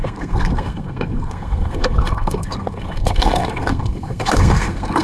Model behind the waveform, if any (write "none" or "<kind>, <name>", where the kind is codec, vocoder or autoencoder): codec, SNAC